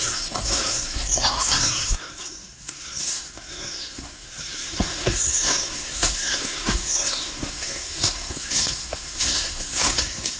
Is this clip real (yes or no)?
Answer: no